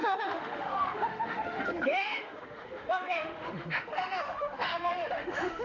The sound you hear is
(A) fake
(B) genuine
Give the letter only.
A